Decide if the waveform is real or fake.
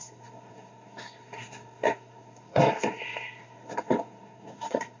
fake